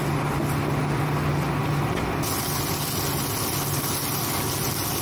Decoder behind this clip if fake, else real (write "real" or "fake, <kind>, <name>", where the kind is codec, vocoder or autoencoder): real